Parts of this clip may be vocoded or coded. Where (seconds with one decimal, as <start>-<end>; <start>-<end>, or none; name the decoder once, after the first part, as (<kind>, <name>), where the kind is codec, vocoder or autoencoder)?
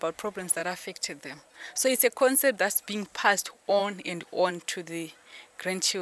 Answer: 0.6-1.2 (vocoder, BigVGAN v2)